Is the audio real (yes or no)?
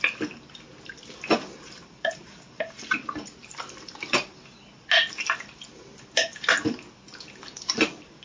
yes